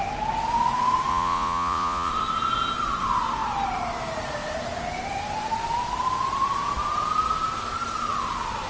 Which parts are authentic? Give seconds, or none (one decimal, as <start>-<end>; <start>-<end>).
0.0-1.1; 2.1-8.7